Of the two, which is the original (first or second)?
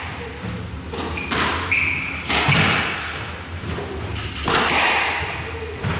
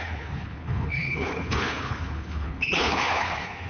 first